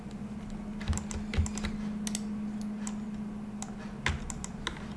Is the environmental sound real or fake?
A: real